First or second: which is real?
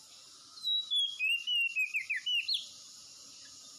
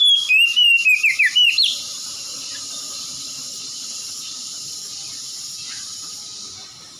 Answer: first